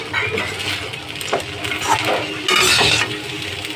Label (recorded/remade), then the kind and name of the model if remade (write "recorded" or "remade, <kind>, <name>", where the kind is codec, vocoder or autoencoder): recorded